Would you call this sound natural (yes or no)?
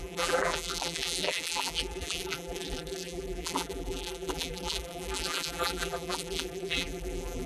no